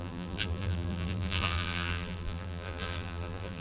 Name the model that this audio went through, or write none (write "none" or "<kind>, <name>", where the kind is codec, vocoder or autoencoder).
vocoder, BigVGAN v2